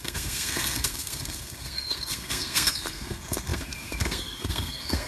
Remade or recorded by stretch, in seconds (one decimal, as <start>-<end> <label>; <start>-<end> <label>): 0.0-5.1 remade

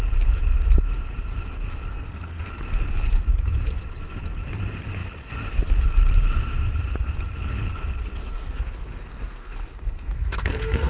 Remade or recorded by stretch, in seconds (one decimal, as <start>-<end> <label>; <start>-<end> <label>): 0.0-1.9 recorded; 1.9-2.5 remade; 2.5-8.2 recorded; 8.2-10.9 remade